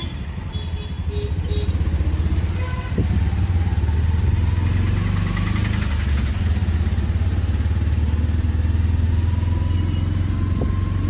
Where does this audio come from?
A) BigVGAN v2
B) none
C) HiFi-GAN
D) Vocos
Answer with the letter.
B